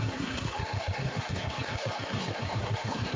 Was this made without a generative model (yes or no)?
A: no